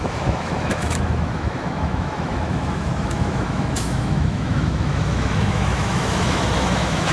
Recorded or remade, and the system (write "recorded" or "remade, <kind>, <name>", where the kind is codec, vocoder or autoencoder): remade, autoencoder, DAC-VAE